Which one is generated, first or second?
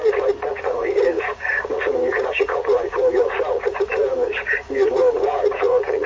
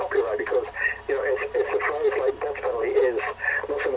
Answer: first